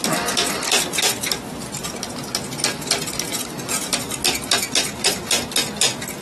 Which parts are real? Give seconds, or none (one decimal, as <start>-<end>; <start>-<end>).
0.0-6.2